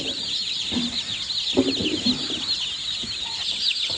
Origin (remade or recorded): recorded